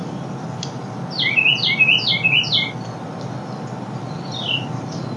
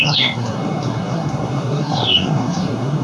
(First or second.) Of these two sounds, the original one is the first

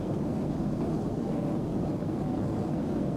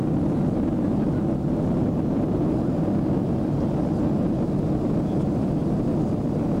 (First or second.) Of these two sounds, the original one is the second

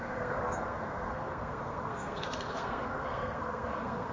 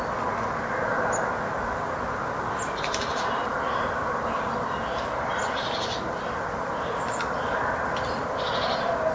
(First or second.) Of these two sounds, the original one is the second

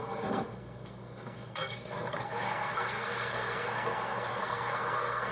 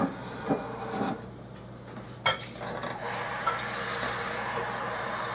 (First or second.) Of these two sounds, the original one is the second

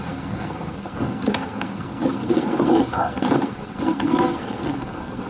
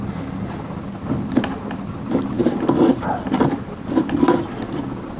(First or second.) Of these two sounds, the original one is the second